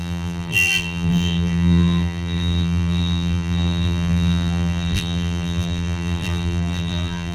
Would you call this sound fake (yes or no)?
yes